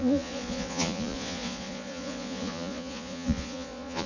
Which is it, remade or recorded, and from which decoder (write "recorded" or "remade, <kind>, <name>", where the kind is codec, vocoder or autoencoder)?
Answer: remade, vocoder, Vocos